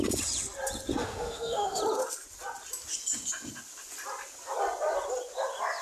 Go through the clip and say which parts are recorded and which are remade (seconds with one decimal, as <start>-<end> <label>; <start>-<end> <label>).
0.0-1.0 recorded; 1.0-1.8 remade; 1.8-5.8 recorded